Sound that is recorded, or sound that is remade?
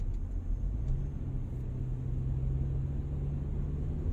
recorded